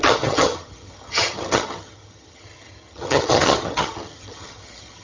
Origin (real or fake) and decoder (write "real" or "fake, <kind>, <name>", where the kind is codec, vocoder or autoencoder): fake, vocoder, HiFi-GAN